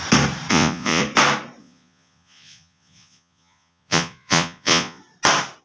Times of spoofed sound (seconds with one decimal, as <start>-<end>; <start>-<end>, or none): 0.5-1.0; 1.6-5.0